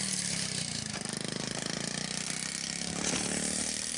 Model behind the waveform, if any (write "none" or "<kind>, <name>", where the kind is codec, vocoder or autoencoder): none